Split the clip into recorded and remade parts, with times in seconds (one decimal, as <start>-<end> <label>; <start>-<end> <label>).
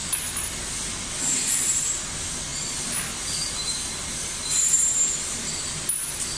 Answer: 0.0-6.4 recorded